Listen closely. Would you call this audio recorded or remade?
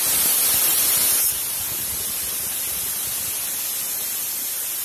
recorded